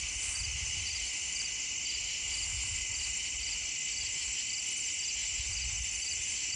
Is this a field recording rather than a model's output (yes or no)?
yes